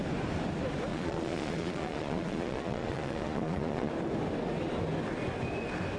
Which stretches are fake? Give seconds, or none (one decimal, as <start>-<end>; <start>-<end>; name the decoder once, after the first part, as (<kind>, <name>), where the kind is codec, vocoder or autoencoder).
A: 0.9-3.9 (vocoder, Vocos)